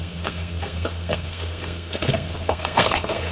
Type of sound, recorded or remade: remade